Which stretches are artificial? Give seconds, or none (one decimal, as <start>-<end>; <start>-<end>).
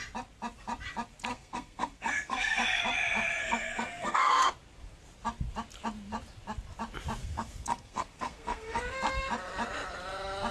1.3-2.8; 3.4-4.5; 7.2-8.8